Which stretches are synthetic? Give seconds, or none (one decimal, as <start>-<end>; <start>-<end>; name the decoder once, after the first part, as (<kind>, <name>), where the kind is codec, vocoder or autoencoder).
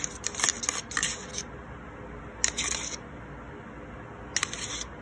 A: none